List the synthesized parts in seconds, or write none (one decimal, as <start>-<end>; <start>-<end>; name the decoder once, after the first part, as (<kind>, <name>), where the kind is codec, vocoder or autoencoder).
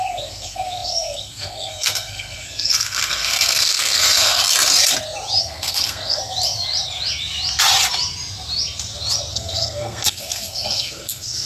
0.0-4.4 (codec, SNAC); 5.4-6.2; 9.3-11.5